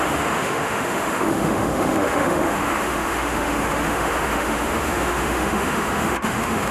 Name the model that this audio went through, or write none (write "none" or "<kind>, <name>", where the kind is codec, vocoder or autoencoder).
autoencoder, DAC-VAE